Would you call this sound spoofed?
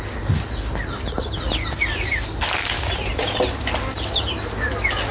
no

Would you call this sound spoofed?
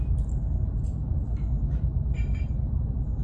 no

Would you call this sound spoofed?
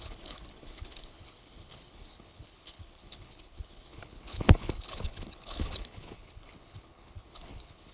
yes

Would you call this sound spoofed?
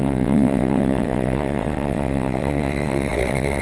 yes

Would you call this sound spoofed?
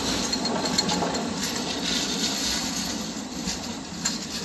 no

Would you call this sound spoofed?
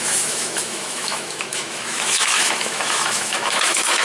yes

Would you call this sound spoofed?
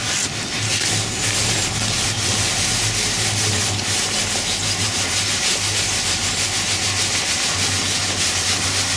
no